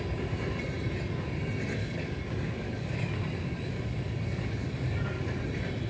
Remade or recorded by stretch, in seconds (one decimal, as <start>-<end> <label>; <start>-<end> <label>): 0.0-1.8 recorded; 1.8-5.3 remade; 5.3-5.9 recorded